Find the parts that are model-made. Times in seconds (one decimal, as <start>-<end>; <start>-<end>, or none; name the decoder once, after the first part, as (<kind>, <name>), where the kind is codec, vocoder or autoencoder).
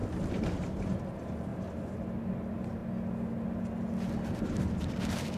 0.0-1.0 (vocoder, BigVGAN v2); 1.5-2.0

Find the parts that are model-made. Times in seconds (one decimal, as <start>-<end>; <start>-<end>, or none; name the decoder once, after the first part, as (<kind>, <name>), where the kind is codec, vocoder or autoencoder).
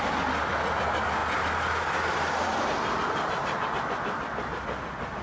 none